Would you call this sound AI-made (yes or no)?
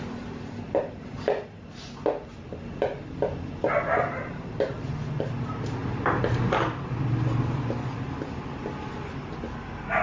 no